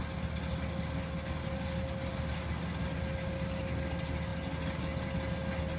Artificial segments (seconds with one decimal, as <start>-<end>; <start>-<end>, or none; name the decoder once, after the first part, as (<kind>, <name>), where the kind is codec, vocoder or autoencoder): none